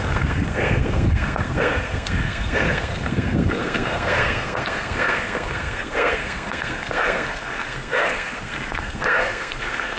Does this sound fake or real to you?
fake